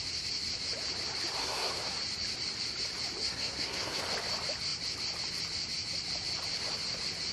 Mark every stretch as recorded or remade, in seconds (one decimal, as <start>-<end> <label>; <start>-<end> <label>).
0.0-1.4 recorded; 1.4-2.0 remade; 2.0-3.2 recorded; 3.2-4.0 remade; 4.0-7.3 recorded